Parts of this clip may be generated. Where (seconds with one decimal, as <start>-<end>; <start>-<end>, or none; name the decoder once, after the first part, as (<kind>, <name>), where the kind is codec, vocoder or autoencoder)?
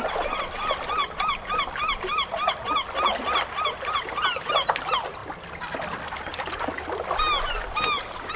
none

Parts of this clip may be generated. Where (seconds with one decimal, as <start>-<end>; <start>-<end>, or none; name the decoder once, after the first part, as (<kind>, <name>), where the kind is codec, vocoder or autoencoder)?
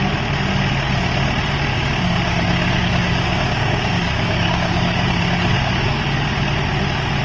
1.7-6.0 (codec, DAC)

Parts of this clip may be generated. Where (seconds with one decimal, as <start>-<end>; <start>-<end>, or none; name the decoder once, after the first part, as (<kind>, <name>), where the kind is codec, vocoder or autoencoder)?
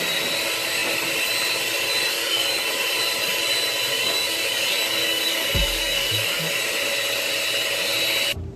2.1-2.7 (codec, DAC); 3.9-6.5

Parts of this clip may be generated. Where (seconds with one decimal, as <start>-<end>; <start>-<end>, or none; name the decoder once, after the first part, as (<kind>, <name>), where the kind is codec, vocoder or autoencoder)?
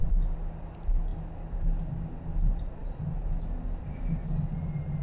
none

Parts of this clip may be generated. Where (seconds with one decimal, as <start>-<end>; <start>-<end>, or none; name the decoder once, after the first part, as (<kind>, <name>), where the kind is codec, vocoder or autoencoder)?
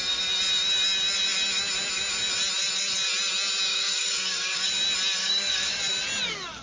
3.7-4.7 (codec, DAC); 5.2-5.8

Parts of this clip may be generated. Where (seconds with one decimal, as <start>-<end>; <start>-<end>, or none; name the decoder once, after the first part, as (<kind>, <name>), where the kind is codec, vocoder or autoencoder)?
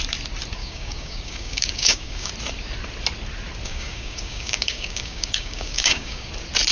0.6-2.3 (codec, DAC); 3.6-6.3